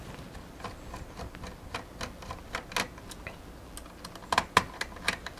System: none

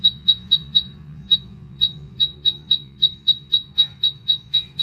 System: vocoder, Vocos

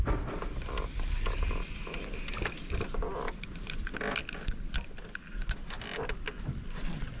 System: none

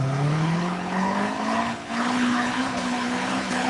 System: codec, HILCodec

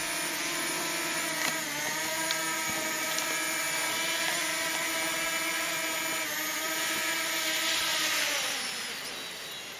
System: none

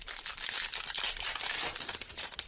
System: none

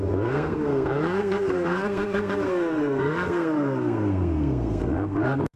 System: codec, SNAC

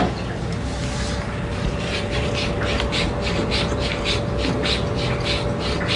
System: none